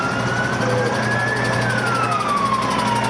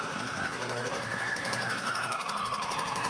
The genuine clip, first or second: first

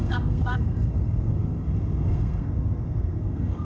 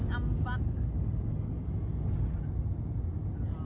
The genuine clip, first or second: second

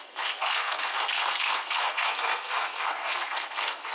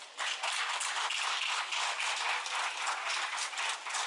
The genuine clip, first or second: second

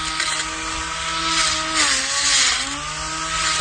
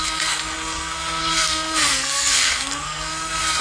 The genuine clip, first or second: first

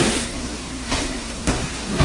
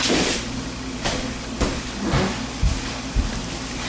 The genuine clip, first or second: second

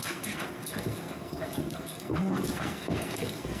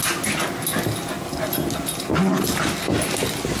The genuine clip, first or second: second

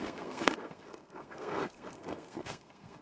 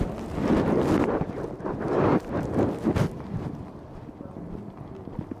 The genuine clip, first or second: second